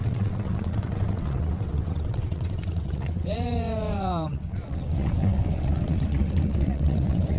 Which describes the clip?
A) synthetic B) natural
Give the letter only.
A